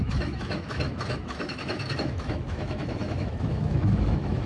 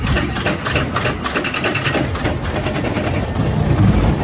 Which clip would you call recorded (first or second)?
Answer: second